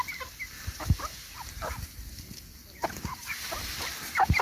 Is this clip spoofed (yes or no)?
no